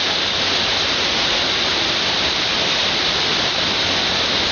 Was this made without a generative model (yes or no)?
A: yes